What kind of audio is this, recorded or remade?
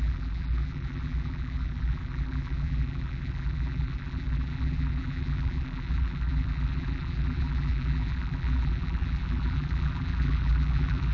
remade